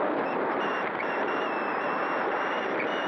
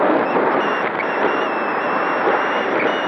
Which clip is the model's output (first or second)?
first